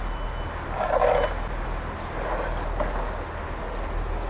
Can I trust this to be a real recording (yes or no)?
yes